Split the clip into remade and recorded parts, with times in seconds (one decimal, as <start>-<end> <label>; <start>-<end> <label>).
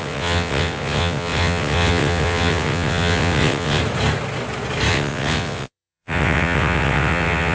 0.0-3.8 remade; 3.8-4.9 recorded; 4.9-7.5 remade